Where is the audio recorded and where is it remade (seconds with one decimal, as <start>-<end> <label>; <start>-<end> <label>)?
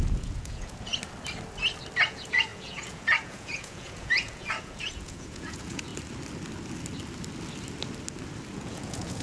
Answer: 0.0-0.9 remade; 0.9-2.1 recorded; 2.1-5.9 remade; 5.9-8.6 recorded; 8.6-9.2 remade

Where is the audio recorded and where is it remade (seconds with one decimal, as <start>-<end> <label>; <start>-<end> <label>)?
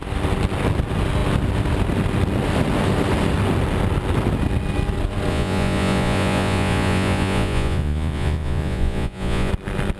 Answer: 0.0-5.3 recorded; 5.3-9.5 remade; 9.5-10.0 recorded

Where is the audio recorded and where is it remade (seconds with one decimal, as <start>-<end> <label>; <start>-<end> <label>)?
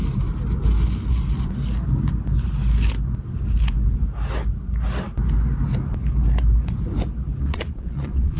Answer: 0.0-7.4 recorded; 7.4-8.4 remade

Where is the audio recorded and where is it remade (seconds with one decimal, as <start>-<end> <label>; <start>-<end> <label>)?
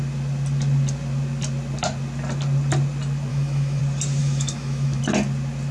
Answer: 0.0-3.3 recorded; 3.3-3.8 remade; 3.8-4.2 recorded; 4.2-5.0 remade; 5.0-5.7 recorded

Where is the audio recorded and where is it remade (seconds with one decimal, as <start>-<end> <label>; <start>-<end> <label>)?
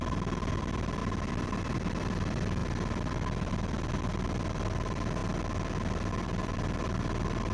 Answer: 0.0-5.2 remade; 5.2-6.1 recorded; 6.1-7.5 remade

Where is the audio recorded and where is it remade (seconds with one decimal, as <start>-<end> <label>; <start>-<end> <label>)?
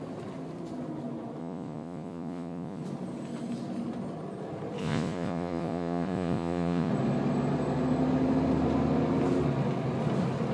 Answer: 0.0-1.4 recorded; 1.4-2.8 remade; 2.8-4.8 recorded; 4.8-6.9 remade; 6.9-10.5 recorded